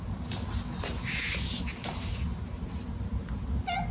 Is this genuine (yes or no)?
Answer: yes